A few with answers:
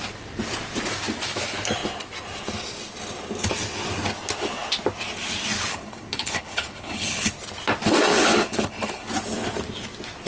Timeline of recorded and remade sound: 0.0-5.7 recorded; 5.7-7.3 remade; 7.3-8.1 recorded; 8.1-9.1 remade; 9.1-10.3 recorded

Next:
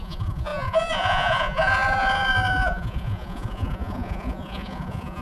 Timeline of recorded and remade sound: 0.0-5.2 remade